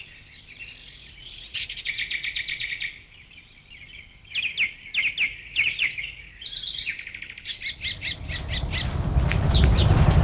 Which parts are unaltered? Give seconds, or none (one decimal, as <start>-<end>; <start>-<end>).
0.0-0.8; 2.7-5.3; 6.9-10.2